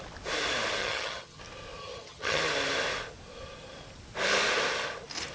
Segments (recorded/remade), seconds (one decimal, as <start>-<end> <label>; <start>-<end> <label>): 0.0-0.8 recorded; 0.8-1.4 remade; 1.4-1.8 recorded; 1.8-2.4 remade; 2.4-5.3 recorded